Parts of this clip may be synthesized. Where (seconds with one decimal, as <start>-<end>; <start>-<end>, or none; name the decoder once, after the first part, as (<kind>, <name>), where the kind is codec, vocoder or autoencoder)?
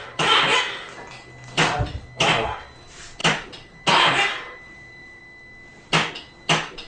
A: 0.0-0.6 (vocoder, BigVGAN v2); 3.2-5.2